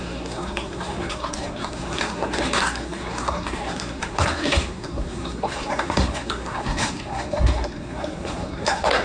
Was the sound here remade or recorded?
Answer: remade